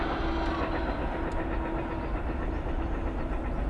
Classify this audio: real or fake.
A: real